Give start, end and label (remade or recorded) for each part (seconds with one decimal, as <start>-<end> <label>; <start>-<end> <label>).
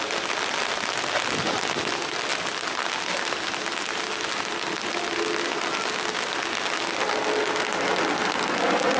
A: 0.0-9.0 recorded